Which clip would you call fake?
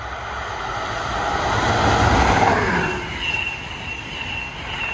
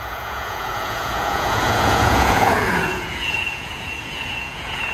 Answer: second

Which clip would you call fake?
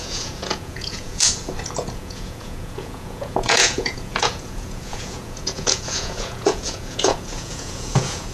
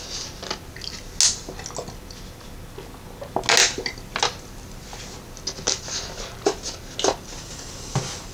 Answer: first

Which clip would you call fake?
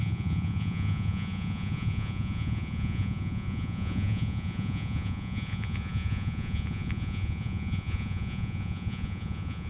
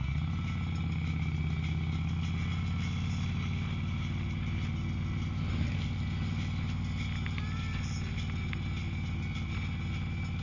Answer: first